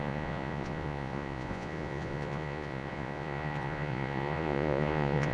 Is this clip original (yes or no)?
no